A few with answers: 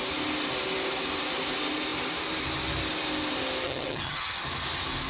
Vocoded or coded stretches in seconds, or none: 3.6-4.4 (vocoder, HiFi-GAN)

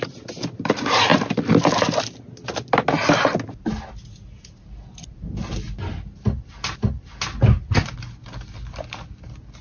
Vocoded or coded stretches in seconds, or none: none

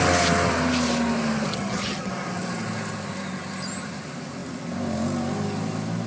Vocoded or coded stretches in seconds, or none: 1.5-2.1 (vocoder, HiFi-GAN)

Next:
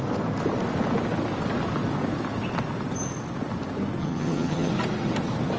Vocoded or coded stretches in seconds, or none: 4.0-4.7 (vocoder, HiFi-GAN)